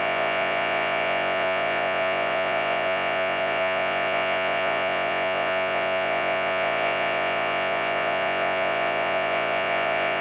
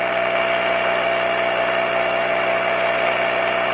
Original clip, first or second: second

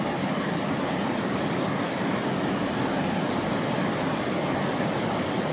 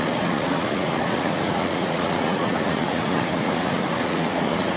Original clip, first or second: first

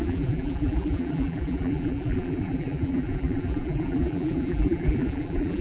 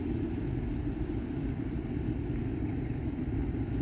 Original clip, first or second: second